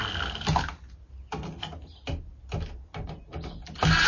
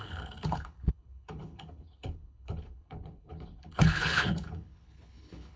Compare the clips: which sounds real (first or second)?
first